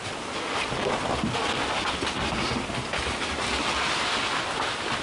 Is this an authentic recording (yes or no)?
yes